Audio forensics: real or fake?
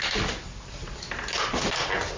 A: real